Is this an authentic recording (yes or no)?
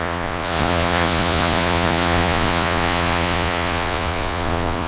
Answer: no